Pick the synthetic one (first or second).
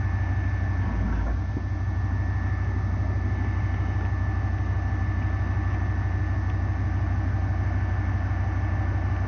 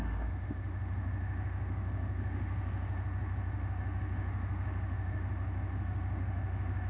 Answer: second